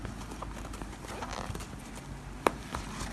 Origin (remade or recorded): recorded